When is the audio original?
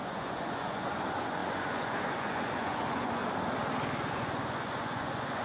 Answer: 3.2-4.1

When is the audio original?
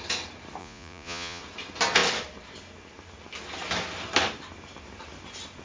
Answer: 0.0-0.6; 1.4-5.6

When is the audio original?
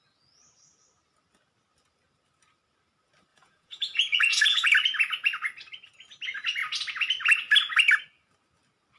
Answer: 0.0-3.3; 4.7-9.0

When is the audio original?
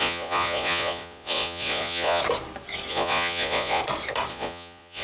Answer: 2.2-2.9; 3.8-4.3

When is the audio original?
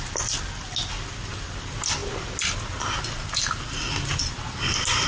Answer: 0.0-5.1